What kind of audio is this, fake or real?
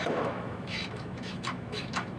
fake